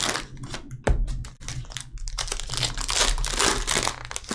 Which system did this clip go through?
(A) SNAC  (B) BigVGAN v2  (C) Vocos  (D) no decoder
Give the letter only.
D